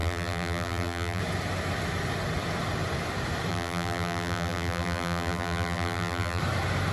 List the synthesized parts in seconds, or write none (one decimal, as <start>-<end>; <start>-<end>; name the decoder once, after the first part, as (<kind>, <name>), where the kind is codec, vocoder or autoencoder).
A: 0.0-1.2 (vocoder, BigVGAN v2); 3.5-6.4